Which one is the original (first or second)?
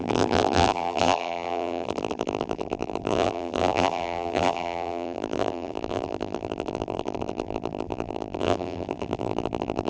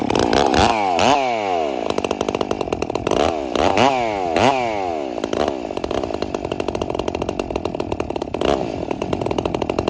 second